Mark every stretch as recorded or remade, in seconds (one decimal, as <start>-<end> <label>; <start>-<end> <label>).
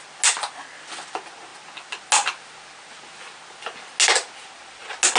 0.0-5.2 recorded